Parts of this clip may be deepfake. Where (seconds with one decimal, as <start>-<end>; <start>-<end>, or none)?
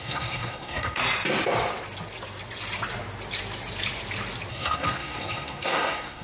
0.0-1.0; 4.5-6.2